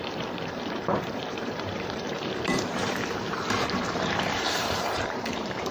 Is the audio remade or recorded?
remade